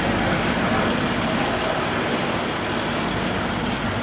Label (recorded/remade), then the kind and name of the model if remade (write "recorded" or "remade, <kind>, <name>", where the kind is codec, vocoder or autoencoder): recorded